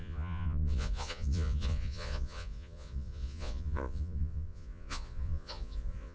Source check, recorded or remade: remade